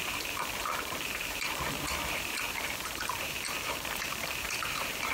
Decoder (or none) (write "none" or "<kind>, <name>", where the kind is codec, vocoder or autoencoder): vocoder, BigVGAN v2